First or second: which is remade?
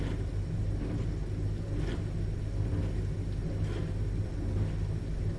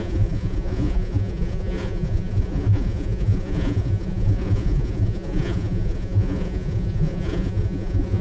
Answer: second